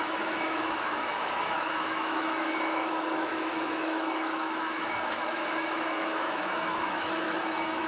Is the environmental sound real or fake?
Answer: fake